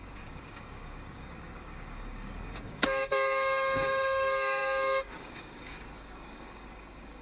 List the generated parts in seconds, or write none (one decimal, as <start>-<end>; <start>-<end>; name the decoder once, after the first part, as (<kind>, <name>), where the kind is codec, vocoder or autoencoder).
0.0-7.2 (codec, DAC)